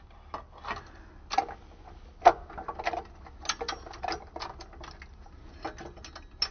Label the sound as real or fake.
real